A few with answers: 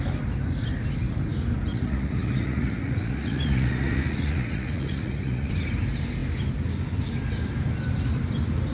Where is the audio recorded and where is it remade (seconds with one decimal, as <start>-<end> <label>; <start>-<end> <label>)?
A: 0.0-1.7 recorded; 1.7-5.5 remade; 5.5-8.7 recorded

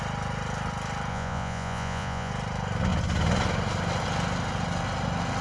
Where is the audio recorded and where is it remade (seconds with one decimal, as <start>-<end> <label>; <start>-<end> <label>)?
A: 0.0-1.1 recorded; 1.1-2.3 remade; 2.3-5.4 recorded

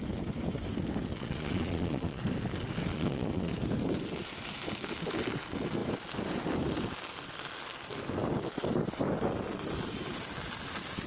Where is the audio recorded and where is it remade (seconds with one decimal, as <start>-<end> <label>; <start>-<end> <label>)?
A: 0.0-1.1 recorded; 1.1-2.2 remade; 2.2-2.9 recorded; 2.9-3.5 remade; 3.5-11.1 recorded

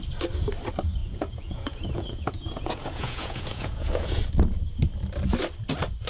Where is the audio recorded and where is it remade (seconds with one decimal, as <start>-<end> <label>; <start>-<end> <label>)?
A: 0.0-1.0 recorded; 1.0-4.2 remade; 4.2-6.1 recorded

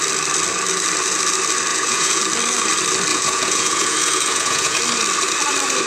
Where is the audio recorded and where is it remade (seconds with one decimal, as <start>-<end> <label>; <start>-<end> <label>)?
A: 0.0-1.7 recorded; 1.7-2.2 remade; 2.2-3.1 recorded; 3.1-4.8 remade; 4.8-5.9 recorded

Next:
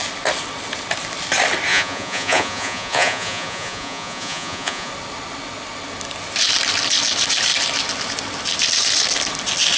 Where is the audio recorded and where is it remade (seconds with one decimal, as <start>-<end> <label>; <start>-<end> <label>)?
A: 0.0-1.7 recorded; 1.7-4.9 remade; 4.9-9.8 recorded

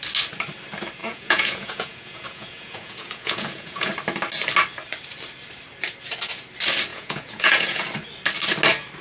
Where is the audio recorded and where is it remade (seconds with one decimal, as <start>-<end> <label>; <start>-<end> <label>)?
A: 0.0-1.0 recorded; 1.0-3.9 remade; 3.9-6.9 recorded; 6.9-7.9 remade; 7.9-9.0 recorded

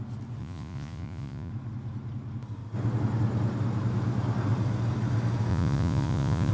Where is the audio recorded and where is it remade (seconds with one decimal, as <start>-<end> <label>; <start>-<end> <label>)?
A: 0.0-0.4 recorded; 0.4-1.5 remade; 1.5-5.5 recorded; 5.5-6.5 remade